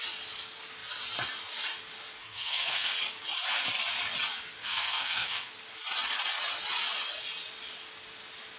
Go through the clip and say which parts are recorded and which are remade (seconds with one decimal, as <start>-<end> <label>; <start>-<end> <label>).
0.0-2.2 recorded; 2.2-2.9 remade; 2.9-4.6 recorded; 4.6-5.5 remade; 5.5-8.6 recorded